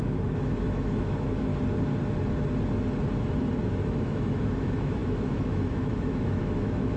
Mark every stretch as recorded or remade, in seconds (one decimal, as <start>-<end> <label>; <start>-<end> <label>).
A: 0.0-1.5 remade; 1.5-3.6 recorded; 3.6-7.0 remade